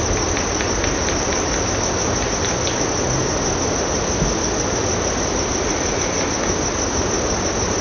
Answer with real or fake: real